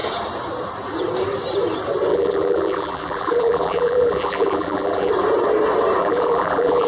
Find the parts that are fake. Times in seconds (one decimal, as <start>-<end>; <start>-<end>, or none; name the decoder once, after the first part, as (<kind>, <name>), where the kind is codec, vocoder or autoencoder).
2.1-5.1 (vocoder, BigVGAN v2); 6.0-6.9

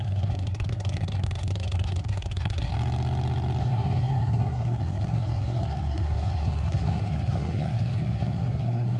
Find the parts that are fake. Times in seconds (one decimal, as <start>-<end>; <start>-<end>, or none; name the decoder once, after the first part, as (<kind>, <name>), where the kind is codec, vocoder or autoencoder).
0.0-2.7 (codec, SNAC); 3.6-9.0